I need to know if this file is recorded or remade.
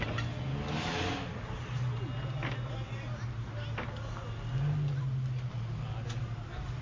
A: recorded